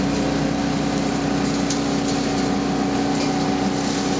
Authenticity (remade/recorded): recorded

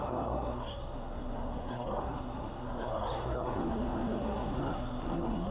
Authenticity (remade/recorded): remade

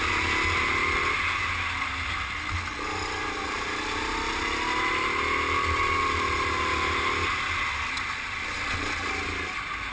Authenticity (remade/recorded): recorded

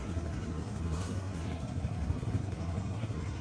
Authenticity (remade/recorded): remade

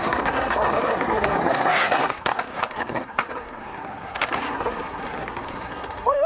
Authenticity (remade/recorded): remade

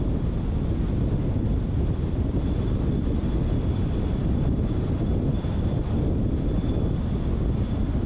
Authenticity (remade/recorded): recorded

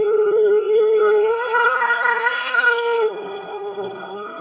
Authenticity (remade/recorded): remade